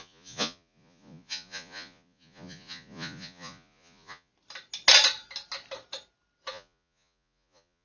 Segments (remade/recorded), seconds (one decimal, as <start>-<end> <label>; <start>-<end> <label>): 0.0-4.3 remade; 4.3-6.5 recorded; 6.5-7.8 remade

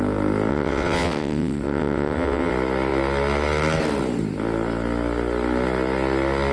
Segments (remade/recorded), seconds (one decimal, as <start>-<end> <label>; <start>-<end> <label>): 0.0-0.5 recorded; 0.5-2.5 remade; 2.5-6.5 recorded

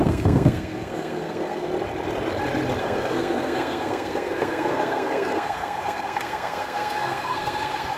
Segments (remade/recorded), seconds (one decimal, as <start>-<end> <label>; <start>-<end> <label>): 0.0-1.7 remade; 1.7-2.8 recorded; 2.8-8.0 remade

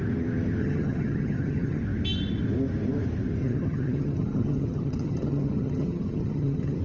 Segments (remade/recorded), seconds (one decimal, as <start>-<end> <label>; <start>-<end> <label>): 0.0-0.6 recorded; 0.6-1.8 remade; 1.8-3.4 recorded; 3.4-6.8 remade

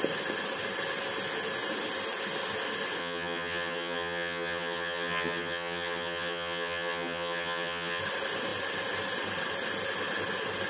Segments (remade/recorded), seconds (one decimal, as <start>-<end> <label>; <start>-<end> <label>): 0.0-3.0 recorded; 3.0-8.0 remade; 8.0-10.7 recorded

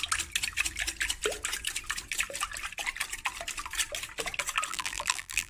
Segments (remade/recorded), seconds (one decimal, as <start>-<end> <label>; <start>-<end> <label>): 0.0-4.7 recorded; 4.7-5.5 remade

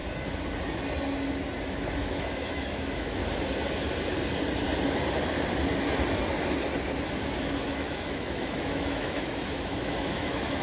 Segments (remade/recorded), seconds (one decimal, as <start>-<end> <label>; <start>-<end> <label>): 0.0-2.0 recorded; 2.0-3.2 remade; 3.2-7.4 recorded; 7.4-10.6 remade

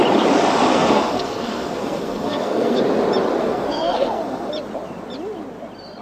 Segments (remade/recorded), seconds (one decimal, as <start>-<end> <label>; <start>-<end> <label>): 0.0-0.7 recorded; 0.7-2.8 remade; 2.8-3.4 recorded; 3.4-4.5 remade; 4.5-6.0 recorded